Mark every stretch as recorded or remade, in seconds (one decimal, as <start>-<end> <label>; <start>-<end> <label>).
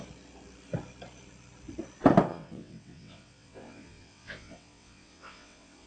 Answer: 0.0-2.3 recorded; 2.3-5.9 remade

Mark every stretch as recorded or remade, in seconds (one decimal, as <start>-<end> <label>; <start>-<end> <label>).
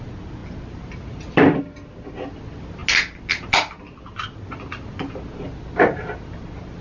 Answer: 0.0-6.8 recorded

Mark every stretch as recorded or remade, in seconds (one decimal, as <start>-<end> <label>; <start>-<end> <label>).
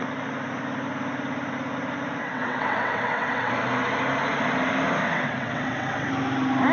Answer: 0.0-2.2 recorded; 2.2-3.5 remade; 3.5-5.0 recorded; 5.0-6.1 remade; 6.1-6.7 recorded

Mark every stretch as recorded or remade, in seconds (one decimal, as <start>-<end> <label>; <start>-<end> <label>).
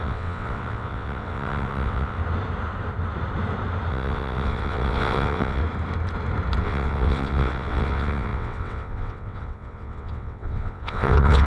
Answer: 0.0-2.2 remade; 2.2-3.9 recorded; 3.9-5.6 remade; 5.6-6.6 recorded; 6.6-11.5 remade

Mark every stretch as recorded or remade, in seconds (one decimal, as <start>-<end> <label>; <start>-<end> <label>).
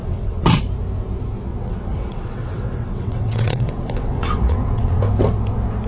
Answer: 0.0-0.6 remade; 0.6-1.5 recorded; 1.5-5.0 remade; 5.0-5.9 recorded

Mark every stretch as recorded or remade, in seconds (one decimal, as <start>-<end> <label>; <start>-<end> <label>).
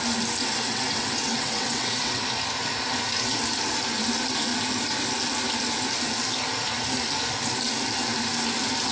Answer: 0.0-0.4 recorded; 0.4-2.2 remade; 2.2-8.9 recorded